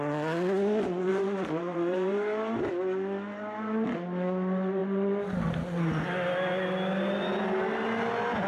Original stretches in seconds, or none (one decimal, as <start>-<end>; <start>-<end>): 0.0-1.1; 2.7-8.5